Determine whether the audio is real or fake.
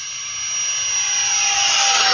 real